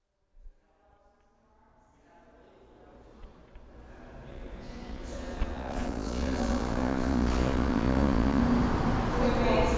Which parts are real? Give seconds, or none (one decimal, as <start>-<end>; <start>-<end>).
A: 0.0-4.3; 8.4-9.8